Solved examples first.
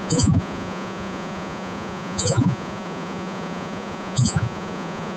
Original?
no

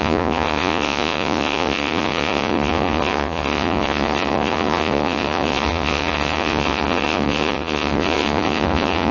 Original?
no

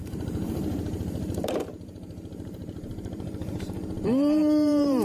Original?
no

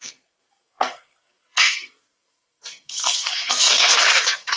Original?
no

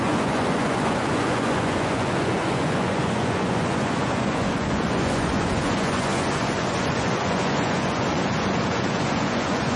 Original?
no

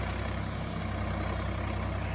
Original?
yes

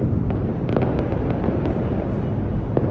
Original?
yes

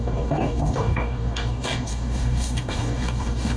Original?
no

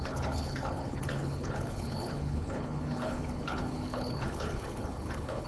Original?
no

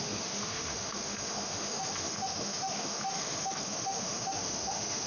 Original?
no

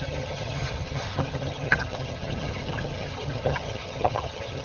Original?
no